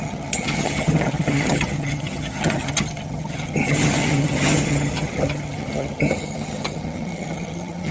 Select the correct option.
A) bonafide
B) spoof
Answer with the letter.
B